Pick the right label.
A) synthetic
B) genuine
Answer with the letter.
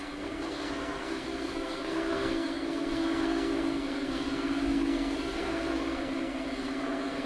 A